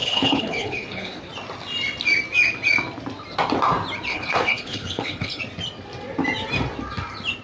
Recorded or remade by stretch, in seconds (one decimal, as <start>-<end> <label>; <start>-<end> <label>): 0.0-1.2 remade; 1.2-4.1 recorded; 4.1-5.4 remade; 5.4-7.4 recorded